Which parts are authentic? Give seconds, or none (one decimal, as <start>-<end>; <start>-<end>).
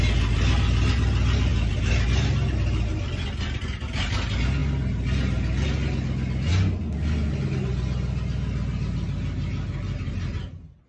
0.0-10.9